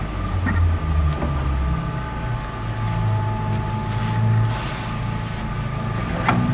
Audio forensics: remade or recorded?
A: recorded